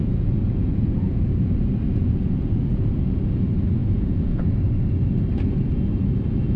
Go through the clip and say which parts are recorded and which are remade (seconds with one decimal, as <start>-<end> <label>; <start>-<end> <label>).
0.0-1.2 remade; 1.2-2.0 recorded; 2.0-3.3 remade; 3.3-3.8 recorded; 3.8-4.4 remade; 4.4-6.6 recorded

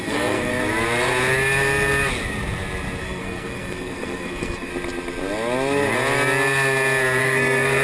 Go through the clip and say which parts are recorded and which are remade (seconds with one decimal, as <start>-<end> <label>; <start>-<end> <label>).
0.0-0.5 remade; 0.5-3.0 recorded; 3.0-4.7 remade; 4.7-7.2 recorded; 7.2-7.8 remade

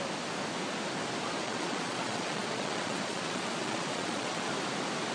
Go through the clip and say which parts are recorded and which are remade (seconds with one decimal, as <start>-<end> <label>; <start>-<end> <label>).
0.0-1.4 recorded; 1.4-4.5 remade; 4.5-5.1 recorded

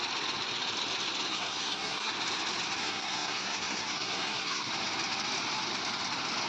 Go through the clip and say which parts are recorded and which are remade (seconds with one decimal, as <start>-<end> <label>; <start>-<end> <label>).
0.0-1.3 recorded; 1.3-2.1 remade; 2.1-2.8 recorded; 2.8-4.7 remade; 4.7-6.5 recorded

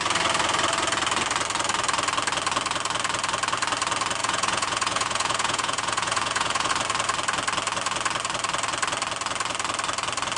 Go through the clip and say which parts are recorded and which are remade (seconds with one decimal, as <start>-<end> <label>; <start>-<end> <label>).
0.0-4.2 recorded; 4.2-6.7 remade; 6.7-10.4 recorded

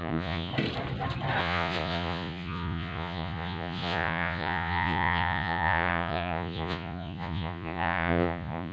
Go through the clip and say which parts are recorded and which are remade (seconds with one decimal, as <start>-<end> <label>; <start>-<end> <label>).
0.0-0.5 remade; 0.5-1.4 recorded; 1.4-8.7 remade

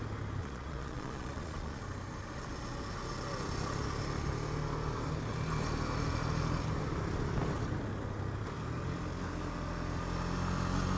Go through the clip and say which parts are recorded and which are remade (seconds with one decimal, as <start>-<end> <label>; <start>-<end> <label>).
0.0-0.4 recorded; 0.4-1.8 remade; 1.8-11.0 recorded

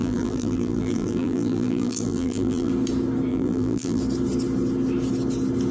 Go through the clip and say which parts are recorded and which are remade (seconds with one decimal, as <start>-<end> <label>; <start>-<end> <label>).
0.0-2.7 remade; 2.7-3.3 recorded; 3.3-4.0 remade; 4.0-5.7 recorded